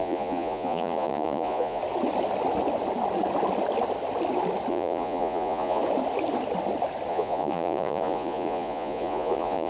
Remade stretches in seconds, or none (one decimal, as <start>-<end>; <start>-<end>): 0.0-1.8; 4.7-5.8; 7.1-9.7